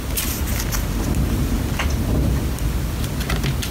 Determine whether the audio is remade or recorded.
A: recorded